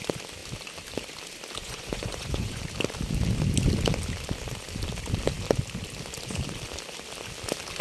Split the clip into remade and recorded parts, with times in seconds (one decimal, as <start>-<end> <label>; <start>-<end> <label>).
0.0-1.6 recorded; 1.6-2.6 remade; 2.6-7.8 recorded